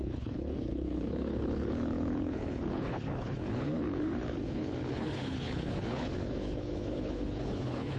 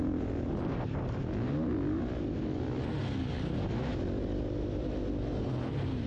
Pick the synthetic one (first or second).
first